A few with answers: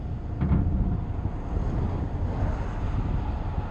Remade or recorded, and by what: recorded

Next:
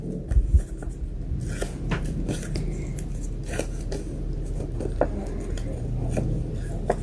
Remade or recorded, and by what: recorded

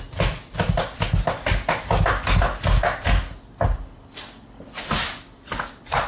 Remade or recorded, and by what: recorded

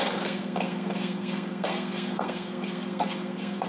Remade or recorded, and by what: remade, codec, SNAC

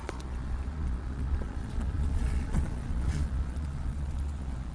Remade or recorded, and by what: remade, vocoder, Vocos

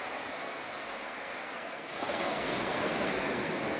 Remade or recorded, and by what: remade, codec, SNAC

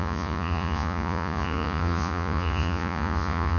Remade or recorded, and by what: remade, vocoder, Vocos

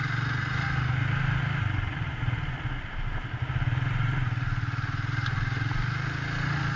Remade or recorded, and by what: recorded